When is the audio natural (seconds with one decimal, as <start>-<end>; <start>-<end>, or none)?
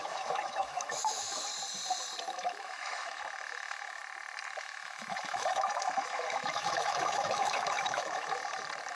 1.5-2.2; 4.0-4.6; 8.4-8.9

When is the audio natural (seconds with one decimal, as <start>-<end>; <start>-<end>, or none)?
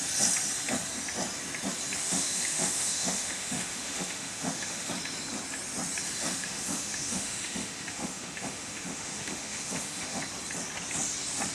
0.0-2.0; 4.9-6.3; 10.2-11.5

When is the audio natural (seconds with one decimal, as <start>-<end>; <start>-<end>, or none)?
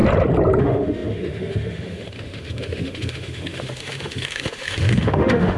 0.0-0.6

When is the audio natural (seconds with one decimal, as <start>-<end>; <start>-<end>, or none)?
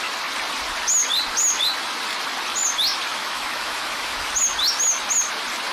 0.0-3.2; 4.3-5.7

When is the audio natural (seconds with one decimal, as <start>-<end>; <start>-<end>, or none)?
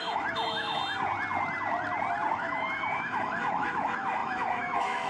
0.8-2.3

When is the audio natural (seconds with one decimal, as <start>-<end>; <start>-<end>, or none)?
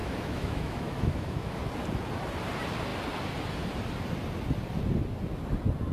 1.6-5.9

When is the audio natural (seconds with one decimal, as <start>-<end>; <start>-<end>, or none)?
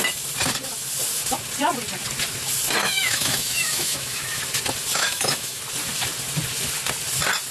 0.0-2.8; 4.4-4.9; 5.6-7.5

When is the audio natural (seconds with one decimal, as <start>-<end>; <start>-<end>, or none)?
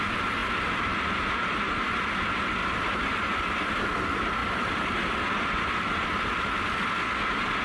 0.0-7.6